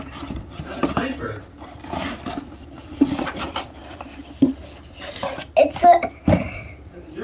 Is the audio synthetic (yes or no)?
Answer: no